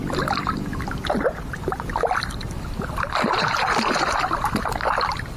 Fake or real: real